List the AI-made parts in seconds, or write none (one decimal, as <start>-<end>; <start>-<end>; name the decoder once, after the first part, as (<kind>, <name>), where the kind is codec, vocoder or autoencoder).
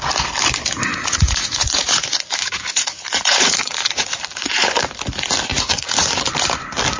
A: 0.9-4.8 (vocoder, Vocos); 5.5-6.2